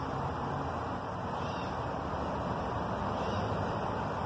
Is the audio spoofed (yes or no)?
yes